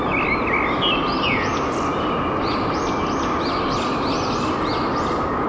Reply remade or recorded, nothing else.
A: recorded